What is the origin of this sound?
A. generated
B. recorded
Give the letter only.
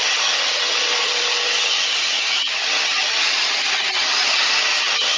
A